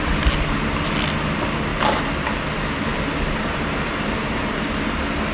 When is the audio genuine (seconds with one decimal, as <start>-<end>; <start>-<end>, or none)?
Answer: 0.0-1.7; 2.4-2.9; 4.7-5.3